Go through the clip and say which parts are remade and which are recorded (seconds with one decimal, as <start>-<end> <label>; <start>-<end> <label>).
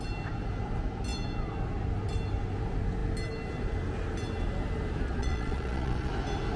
0.0-5.2 recorded; 5.2-6.1 remade; 6.1-6.6 recorded